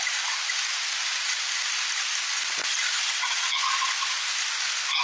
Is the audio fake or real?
real